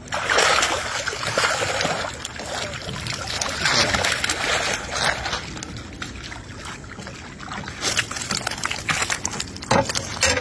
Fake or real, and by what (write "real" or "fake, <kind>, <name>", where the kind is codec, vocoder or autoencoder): real